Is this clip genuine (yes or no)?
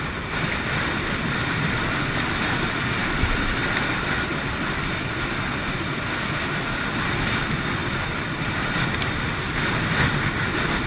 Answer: no